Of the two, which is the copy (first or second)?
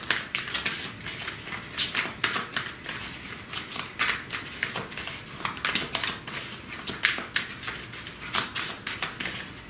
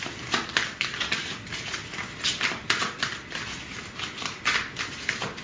second